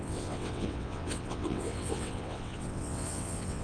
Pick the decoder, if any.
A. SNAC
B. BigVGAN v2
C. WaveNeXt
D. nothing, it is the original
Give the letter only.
C